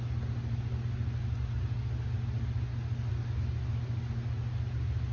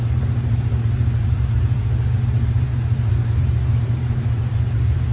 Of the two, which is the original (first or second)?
first